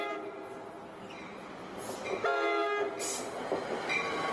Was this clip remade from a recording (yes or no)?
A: no